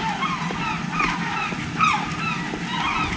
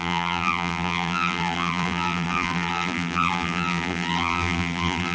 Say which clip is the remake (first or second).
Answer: second